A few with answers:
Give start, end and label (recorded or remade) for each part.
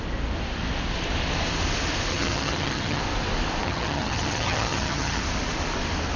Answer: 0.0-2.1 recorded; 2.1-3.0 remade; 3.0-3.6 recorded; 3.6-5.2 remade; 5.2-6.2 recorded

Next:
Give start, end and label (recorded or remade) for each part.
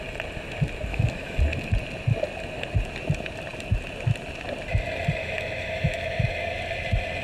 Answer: 0.0-0.9 recorded; 0.9-1.4 remade; 1.4-5.2 recorded; 5.2-6.4 remade; 6.4-7.2 recorded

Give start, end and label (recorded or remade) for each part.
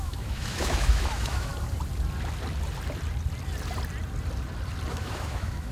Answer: 0.0-1.5 remade; 1.5-4.9 recorded; 4.9-5.7 remade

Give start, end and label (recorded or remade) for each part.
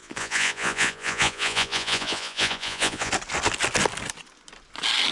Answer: 0.0-3.1 remade; 3.1-5.1 recorded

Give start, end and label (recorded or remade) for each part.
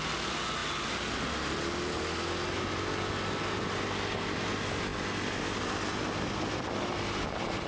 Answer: 0.0-7.7 recorded